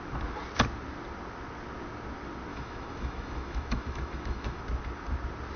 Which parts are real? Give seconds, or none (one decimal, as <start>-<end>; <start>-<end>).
0.0-2.5; 4.6-5.6

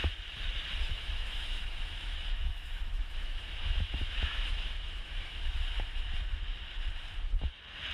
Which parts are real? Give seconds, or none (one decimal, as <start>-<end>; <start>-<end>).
0.0-0.9; 5.6-7.9

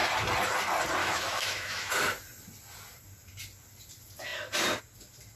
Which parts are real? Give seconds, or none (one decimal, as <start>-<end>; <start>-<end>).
0.0-1.0; 1.9-5.4

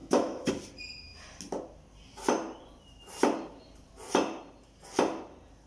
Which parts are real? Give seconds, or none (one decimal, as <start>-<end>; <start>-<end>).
0.5-5.7